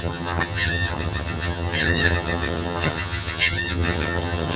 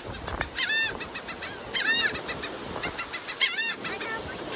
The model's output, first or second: first